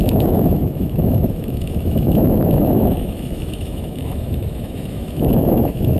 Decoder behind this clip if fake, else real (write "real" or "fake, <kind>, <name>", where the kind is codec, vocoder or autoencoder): fake, autoencoder, DAC-VAE